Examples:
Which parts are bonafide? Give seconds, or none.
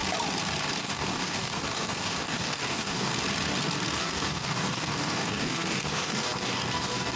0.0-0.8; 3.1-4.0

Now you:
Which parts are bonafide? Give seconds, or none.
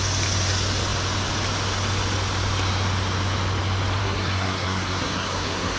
0.0-4.0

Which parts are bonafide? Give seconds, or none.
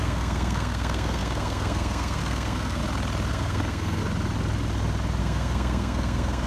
2.8-3.3; 4.0-5.2